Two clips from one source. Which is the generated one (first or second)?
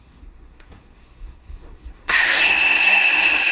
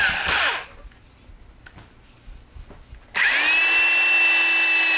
first